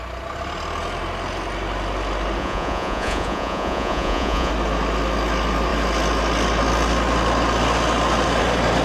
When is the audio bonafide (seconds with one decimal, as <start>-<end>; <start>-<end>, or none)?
0.0-2.4; 4.5-8.8